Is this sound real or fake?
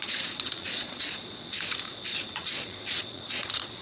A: fake